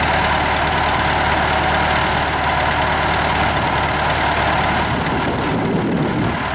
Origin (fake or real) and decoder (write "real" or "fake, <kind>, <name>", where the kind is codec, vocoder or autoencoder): real